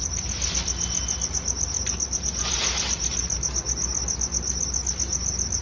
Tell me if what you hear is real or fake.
real